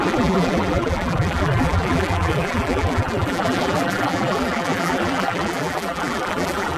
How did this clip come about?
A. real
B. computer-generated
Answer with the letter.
B